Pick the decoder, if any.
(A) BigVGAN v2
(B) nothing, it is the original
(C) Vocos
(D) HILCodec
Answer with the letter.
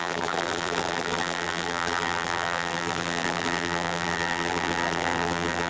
A